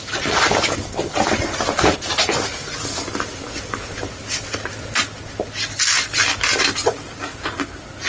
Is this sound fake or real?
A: real